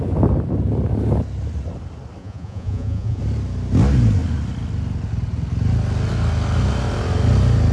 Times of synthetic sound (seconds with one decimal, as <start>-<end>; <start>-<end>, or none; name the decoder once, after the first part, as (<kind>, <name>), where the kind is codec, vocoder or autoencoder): 2.2-3.2 (vocoder, Vocos)